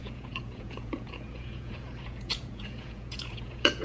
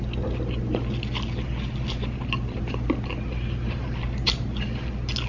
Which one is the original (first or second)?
second